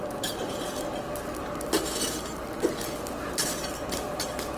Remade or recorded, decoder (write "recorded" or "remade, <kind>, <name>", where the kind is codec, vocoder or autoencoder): recorded